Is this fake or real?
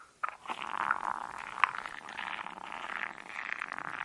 real